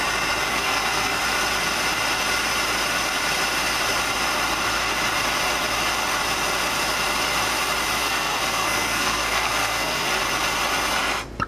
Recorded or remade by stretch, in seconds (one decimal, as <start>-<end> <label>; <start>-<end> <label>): 0.0-0.5 recorded; 0.5-1.2 remade; 1.2-8.0 recorded; 8.0-10.2 remade; 10.2-11.5 recorded